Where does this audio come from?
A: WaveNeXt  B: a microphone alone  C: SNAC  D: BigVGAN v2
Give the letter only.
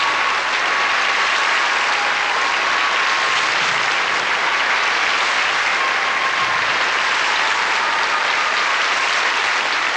B